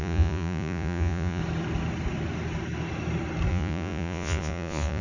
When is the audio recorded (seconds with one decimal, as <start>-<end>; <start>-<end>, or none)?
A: 1.4-3.5